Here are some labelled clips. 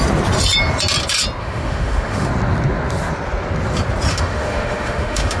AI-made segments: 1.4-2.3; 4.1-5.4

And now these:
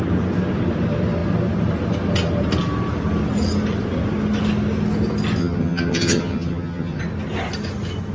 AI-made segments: 5.4-7.0

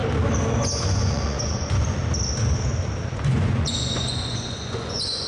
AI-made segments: 0.6-2.0; 3.1-5.3

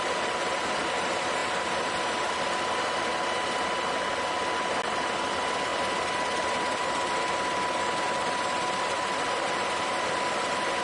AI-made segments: 0.0-3.1; 4.9-10.8

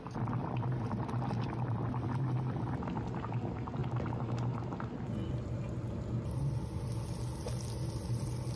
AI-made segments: none

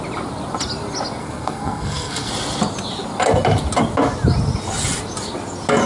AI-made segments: 1.2-2.3

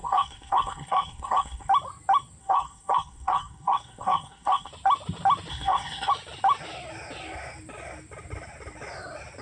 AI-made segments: 0.0-1.7; 2.4-4.7; 5.5-6.1

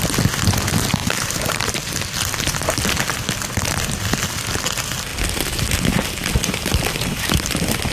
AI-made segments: 1.0-2.0